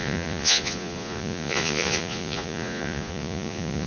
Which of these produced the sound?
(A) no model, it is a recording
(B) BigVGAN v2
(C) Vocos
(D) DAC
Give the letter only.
C